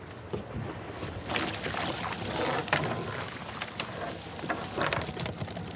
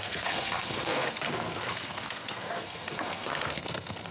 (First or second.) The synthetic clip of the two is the second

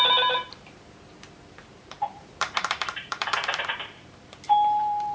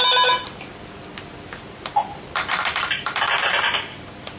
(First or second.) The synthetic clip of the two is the first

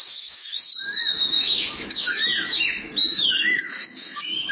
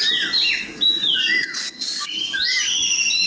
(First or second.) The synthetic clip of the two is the first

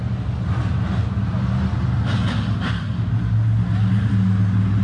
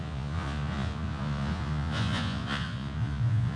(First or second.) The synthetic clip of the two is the second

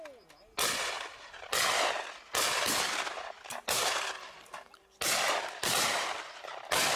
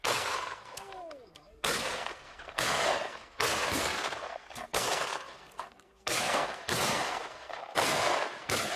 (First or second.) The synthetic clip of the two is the second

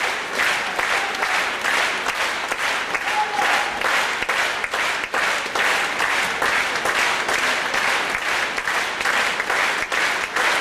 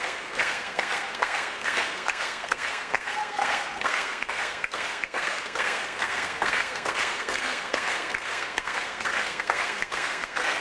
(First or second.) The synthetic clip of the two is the second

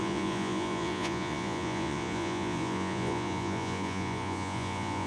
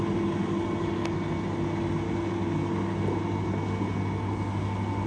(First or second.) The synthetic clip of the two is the first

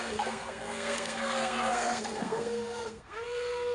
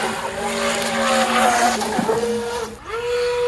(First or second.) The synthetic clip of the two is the first